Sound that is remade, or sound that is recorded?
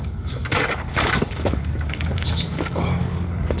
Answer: remade